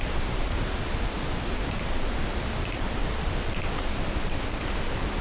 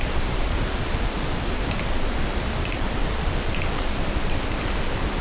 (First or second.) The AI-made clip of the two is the second